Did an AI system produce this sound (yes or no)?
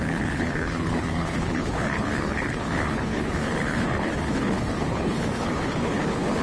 yes